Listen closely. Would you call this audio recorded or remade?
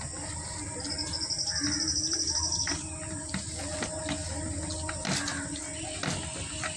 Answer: recorded